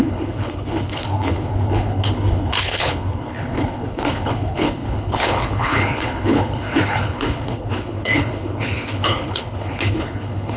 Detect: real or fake fake